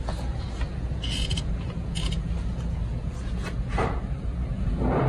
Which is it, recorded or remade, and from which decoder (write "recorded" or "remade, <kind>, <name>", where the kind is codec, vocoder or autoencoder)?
remade, vocoder, Vocos